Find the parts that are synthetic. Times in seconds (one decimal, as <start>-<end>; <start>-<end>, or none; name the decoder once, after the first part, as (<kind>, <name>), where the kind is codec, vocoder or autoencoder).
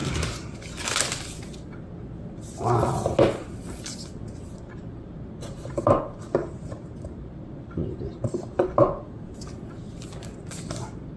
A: 6.4-8.5 (vocoder, BigVGAN v2)